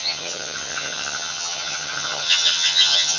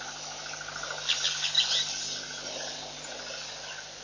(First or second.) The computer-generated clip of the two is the first